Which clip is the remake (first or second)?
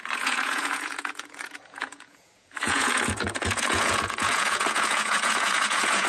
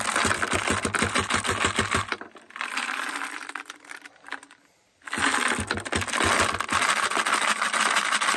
first